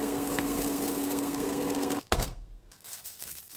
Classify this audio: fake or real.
fake